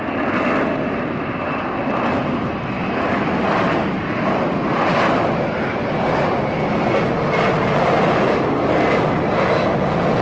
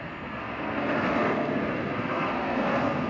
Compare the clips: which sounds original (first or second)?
first